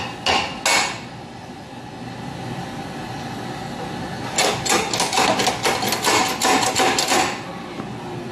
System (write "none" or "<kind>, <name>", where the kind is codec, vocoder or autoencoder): none